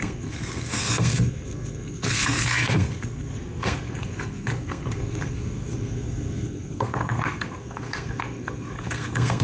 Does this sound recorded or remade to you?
remade